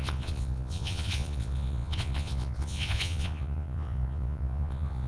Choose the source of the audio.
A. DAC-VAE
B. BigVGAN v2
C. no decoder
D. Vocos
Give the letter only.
D